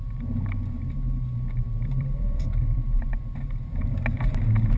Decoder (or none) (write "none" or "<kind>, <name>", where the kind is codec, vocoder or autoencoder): vocoder, BigVGAN v2